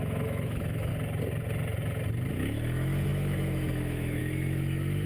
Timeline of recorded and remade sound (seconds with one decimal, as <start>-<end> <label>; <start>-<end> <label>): 0.0-0.9 remade; 0.9-2.3 recorded; 2.3-5.1 remade